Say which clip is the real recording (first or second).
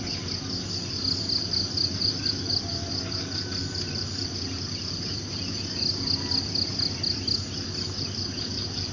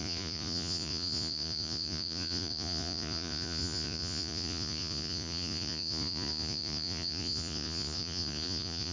first